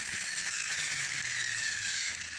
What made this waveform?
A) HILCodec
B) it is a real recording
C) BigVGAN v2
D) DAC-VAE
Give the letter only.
D